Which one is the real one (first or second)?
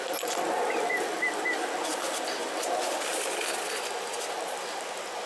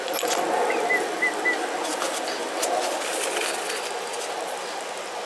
second